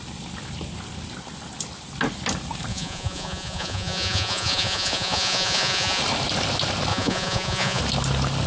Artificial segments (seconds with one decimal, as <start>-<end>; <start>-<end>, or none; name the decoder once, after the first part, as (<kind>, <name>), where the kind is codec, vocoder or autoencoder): 2.7-6.0 (vocoder, Vocos); 6.9-7.8